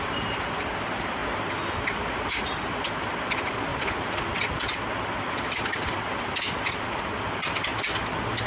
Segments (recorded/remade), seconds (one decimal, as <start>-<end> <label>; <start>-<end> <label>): 0.0-8.5 recorded